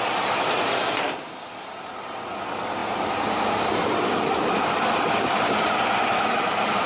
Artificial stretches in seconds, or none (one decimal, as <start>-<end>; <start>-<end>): none